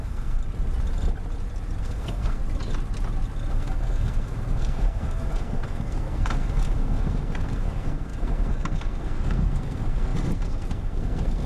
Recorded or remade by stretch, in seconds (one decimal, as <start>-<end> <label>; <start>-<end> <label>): 0.0-0.4 remade; 0.4-1.8 recorded; 1.8-2.4 remade; 2.4-3.5 recorded; 3.5-11.5 remade